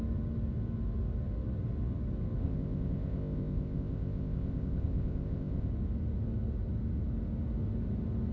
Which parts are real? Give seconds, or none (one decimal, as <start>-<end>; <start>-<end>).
0.0-2.4; 5.7-8.3